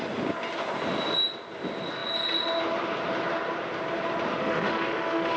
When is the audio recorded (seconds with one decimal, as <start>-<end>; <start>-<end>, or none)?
0.0-4.4